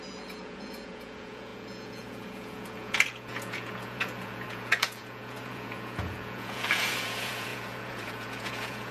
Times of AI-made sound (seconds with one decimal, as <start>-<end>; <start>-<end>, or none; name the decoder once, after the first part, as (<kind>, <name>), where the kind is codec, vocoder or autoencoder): 0.0-8.9 (vocoder, Vocos)